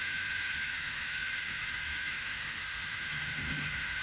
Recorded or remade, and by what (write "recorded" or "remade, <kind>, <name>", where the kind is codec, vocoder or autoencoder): remade, autoencoder, DAC-VAE